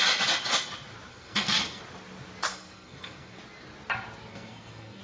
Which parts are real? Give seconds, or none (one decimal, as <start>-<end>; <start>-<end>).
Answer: 0.0-1.1; 1.8-2.5; 3.4-4.3